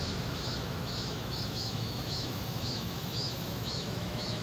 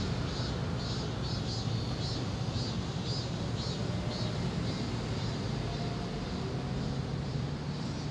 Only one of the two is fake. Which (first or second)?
first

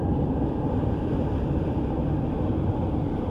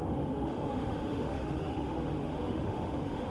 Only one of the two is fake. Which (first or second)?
second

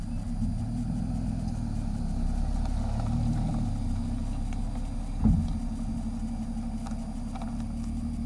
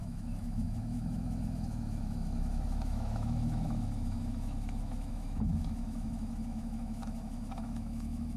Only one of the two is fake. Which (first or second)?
second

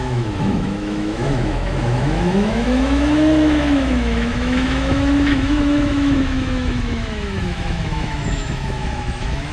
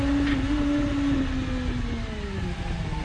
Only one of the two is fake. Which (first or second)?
first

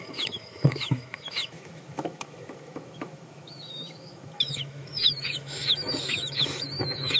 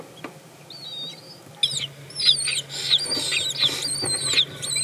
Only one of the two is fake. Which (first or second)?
first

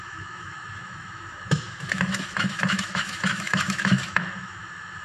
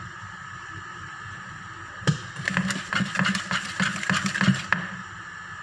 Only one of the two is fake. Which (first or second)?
first